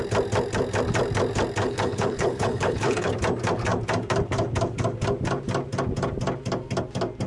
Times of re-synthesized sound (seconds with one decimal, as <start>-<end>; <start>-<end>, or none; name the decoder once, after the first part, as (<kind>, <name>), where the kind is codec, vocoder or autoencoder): 1.6-3.1 (codec, HILCodec)